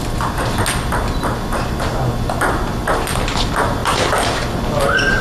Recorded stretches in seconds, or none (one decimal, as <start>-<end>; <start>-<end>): 0.0-5.2